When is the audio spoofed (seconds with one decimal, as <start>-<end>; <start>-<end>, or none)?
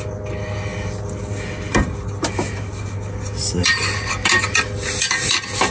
none